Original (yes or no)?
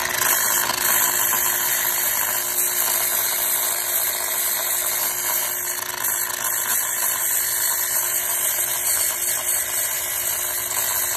yes